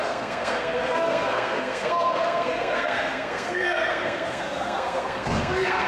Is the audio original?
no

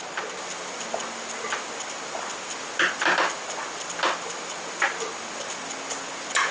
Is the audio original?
yes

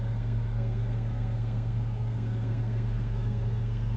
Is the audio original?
no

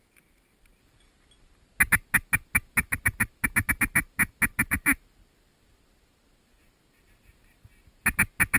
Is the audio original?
yes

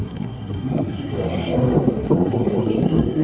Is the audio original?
no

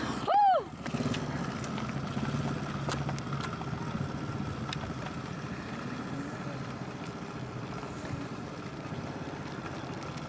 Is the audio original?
yes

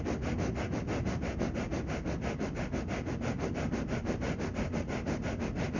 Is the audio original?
yes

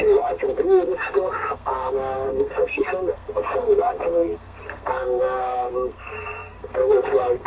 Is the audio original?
no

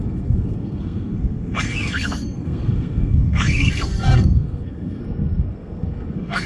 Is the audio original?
no